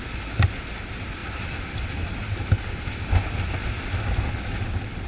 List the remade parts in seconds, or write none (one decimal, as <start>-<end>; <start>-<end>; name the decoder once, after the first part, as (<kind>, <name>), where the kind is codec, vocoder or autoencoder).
none